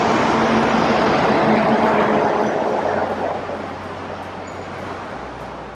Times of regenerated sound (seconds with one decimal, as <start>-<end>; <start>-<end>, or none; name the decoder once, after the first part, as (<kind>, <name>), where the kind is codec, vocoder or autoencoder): none

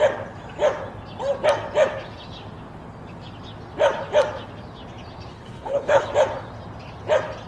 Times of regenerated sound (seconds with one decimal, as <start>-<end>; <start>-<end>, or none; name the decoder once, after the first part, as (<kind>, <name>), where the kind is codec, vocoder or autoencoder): 5.3-6.1 (codec, HILCodec)

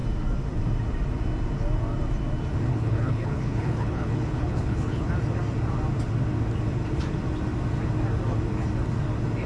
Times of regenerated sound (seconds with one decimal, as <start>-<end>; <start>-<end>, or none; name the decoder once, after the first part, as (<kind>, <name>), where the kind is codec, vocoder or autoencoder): 2.7-5.1 (codec, HILCodec)

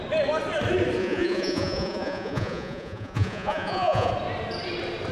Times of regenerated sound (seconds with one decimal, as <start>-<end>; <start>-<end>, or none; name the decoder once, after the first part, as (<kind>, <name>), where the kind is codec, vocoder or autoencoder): 1.0-4.1 (vocoder, Vocos)

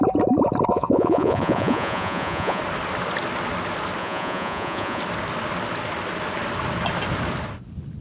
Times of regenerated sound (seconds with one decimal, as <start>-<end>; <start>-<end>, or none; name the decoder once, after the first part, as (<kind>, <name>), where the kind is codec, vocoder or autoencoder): 0.7-2.6 (vocoder, Vocos); 4.0-5.0

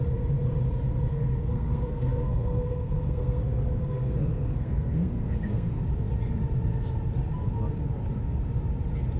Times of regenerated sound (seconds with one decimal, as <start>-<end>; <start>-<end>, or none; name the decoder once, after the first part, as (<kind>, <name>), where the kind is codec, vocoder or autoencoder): 1.1-5.8 (codec, SNAC)

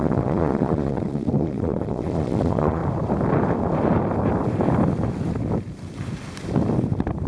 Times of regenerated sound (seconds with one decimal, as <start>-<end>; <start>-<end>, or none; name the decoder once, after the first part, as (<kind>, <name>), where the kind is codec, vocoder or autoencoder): 0.0-2.8 (vocoder, Vocos)